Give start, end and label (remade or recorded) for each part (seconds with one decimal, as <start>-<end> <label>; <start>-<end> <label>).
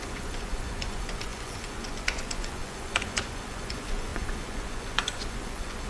0.0-5.9 remade